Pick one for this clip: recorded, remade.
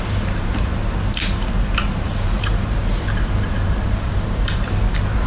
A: remade